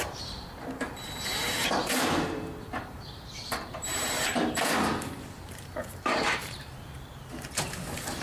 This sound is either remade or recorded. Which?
remade